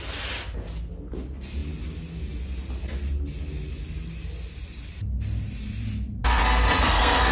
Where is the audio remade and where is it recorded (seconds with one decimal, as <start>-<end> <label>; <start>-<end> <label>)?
0.0-6.4 recorded; 6.4-7.3 remade